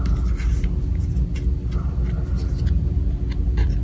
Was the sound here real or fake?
real